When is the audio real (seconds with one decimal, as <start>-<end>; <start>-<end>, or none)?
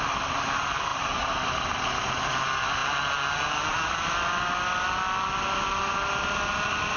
0.0-7.0